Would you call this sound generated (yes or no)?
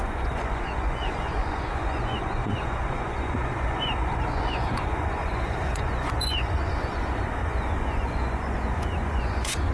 yes